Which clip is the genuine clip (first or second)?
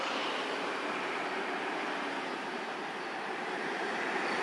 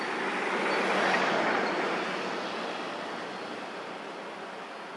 second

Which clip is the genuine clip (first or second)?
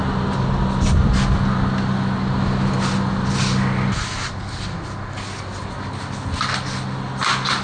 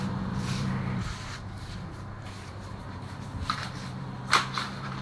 first